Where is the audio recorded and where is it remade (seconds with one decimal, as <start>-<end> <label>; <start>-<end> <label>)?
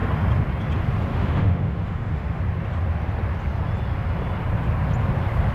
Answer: 0.0-1.1 recorded; 1.1-2.4 remade; 2.4-5.5 recorded